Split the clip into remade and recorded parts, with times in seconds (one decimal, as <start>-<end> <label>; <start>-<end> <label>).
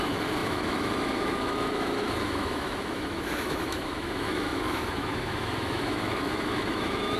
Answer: 0.0-7.2 remade